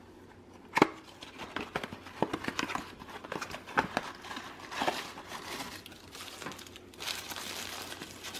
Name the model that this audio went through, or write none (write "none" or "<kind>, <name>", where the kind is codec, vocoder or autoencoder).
none